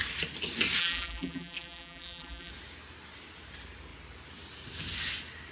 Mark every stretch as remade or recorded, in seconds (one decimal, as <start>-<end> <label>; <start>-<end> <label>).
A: 0.0-0.8 recorded; 0.8-2.5 remade; 2.5-5.5 recorded